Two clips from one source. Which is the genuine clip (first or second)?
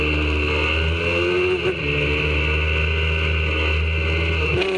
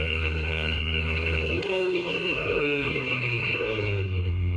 first